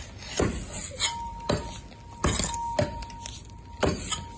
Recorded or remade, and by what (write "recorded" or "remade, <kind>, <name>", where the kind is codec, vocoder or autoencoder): recorded